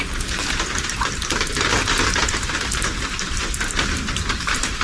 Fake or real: fake